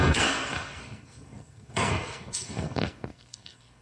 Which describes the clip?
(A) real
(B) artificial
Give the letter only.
B